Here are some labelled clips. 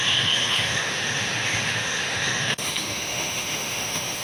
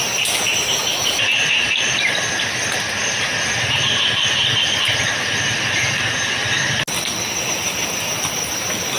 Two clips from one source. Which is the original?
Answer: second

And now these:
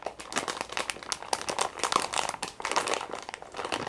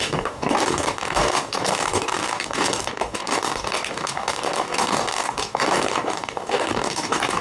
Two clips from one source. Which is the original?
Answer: first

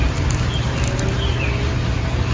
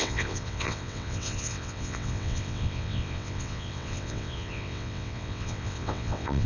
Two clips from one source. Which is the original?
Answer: first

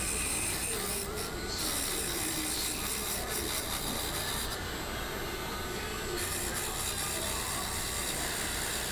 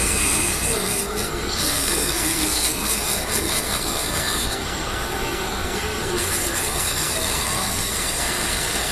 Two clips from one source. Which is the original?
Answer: first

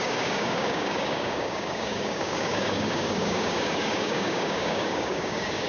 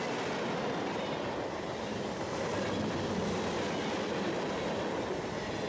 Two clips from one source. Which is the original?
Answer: second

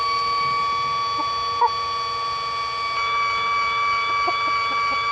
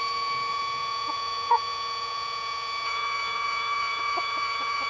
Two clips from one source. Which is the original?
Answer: first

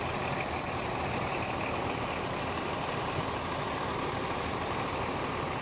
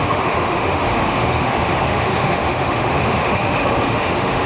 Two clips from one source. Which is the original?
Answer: first